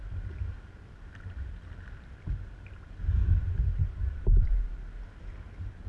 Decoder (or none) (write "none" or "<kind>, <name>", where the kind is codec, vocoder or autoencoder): none